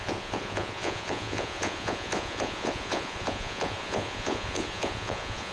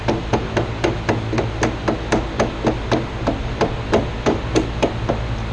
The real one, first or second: second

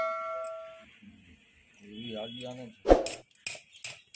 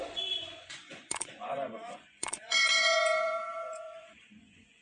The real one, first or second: first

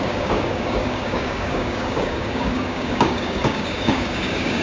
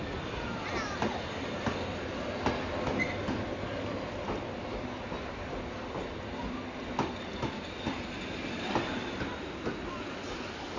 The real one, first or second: second